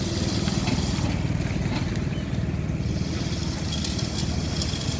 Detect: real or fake real